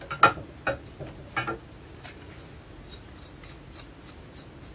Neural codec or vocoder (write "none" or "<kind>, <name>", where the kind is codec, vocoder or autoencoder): none